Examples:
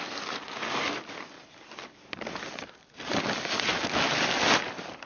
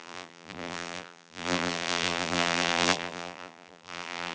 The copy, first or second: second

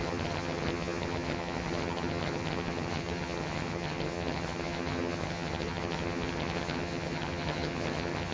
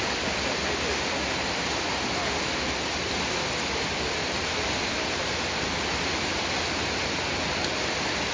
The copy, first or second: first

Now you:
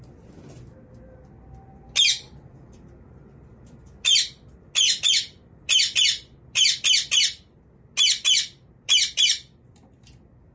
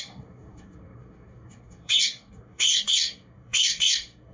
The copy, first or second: second